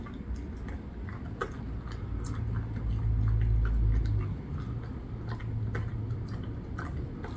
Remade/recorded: recorded